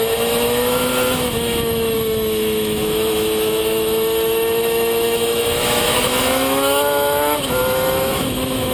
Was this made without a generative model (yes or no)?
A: no